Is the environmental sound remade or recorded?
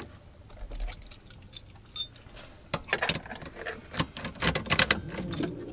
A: recorded